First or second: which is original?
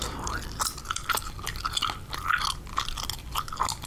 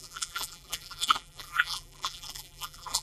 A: first